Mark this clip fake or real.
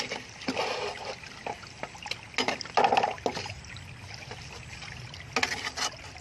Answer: real